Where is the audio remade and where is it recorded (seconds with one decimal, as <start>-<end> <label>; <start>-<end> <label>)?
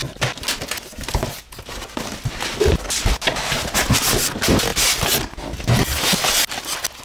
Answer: 0.0-7.0 recorded